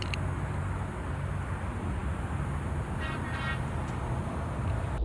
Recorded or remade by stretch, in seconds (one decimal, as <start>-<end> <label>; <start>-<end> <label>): 0.0-5.0 recorded